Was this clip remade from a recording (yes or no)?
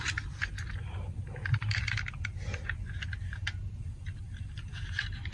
no